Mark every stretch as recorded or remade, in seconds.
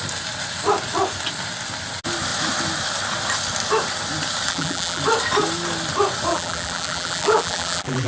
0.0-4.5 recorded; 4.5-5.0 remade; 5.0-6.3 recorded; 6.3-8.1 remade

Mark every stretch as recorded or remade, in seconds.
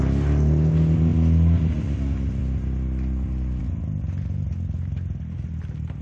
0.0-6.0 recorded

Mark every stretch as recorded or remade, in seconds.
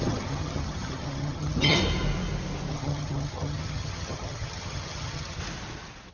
0.0-1.8 remade; 1.8-2.7 recorded; 2.7-5.4 remade; 5.4-6.1 recorded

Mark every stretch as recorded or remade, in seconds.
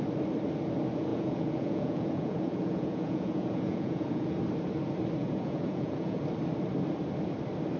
0.0-1.1 recorded; 1.1-4.4 remade; 4.4-5.2 recorded; 5.2-6.2 remade; 6.2-7.8 recorded